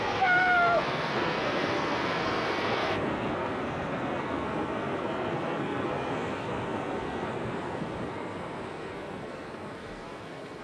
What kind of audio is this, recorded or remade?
remade